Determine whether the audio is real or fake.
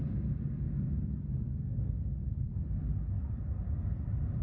real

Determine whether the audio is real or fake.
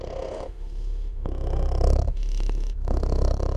fake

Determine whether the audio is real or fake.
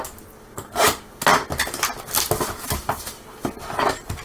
real